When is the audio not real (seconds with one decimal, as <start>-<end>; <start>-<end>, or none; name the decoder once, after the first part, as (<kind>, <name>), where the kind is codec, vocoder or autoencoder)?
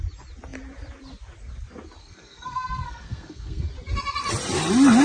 2.0-3.7 (codec, SNAC)